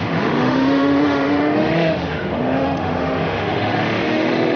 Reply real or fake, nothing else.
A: fake